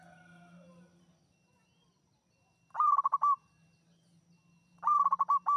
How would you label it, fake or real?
real